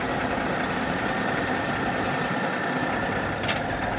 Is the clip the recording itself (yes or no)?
yes